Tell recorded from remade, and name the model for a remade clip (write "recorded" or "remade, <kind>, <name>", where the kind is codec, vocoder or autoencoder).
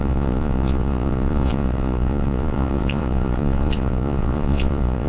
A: remade, vocoder, Vocos